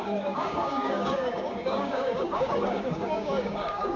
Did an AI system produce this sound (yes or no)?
yes